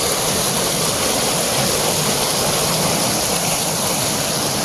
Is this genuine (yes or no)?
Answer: yes